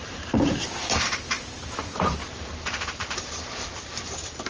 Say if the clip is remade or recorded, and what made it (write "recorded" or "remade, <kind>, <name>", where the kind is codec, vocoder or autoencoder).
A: remade, vocoder, BigVGAN v2